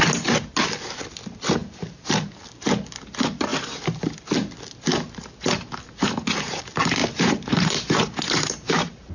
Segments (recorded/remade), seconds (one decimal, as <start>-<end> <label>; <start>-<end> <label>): 0.0-1.6 recorded; 1.6-2.4 remade; 2.4-7.0 recorded; 7.0-9.1 remade